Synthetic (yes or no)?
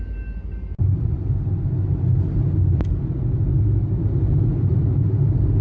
no